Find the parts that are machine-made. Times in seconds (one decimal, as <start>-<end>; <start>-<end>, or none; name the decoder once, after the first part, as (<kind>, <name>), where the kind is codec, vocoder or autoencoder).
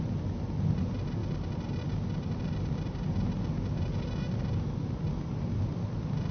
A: none